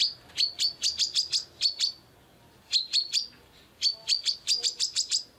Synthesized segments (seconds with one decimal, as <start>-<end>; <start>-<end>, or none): none